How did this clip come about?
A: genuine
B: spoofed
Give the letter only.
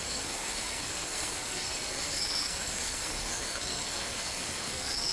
B